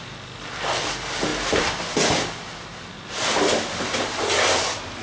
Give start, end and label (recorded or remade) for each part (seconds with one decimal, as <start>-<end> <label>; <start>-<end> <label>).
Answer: 0.0-5.0 recorded